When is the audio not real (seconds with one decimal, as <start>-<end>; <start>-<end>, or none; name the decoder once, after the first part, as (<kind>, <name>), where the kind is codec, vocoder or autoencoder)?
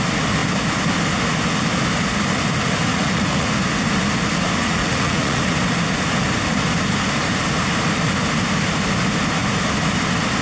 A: 2.9-3.5 (vocoder, Vocos); 4.6-5.4